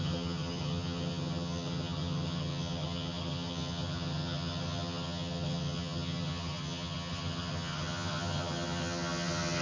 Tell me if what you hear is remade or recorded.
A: remade